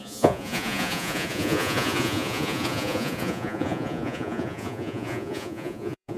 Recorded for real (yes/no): no